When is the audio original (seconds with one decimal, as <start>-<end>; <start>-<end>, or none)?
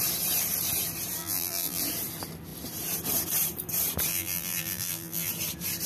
0.0-1.2; 1.8-4.1; 5.3-5.9